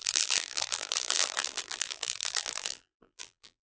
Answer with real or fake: fake